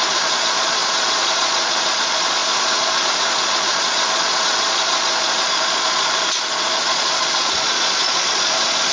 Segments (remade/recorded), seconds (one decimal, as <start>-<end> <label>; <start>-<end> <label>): 0.0-8.9 remade